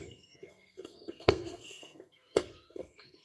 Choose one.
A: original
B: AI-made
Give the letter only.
B